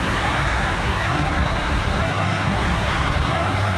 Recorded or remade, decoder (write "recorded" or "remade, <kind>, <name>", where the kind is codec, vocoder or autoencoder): remade, codec, SNAC